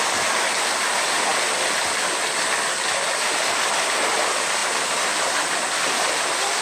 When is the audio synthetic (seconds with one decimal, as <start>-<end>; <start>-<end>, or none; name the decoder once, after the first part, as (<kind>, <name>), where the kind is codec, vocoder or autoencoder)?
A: none